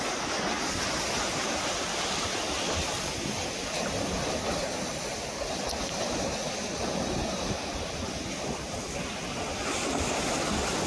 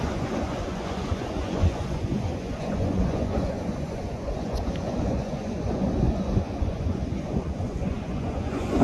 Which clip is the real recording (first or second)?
first